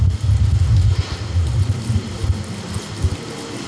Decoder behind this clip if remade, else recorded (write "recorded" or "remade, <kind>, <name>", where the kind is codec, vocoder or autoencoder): recorded